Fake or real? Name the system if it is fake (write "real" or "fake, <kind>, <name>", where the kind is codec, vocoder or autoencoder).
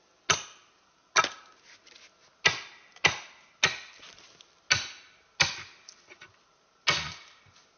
real